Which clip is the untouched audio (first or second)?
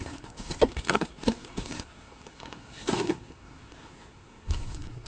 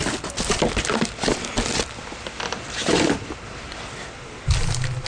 second